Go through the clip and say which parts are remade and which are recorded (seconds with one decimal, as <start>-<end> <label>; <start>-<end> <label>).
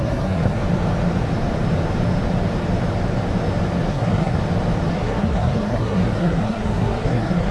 0.0-0.6 remade; 0.6-3.9 recorded; 3.9-4.4 remade; 4.4-4.9 recorded; 4.9-7.5 remade